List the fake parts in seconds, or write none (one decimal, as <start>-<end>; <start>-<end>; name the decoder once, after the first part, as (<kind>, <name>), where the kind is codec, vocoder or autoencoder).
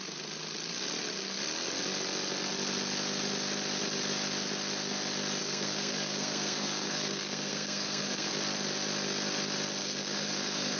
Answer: 5.4-8.3 (codec, SNAC); 9.8-10.8